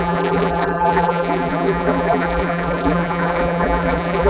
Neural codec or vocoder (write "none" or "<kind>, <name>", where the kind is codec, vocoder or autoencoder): vocoder, BigVGAN v2